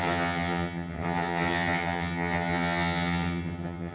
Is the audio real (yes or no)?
no